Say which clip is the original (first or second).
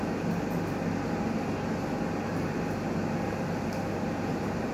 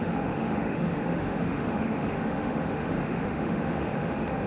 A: first